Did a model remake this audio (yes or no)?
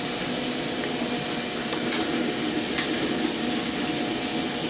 no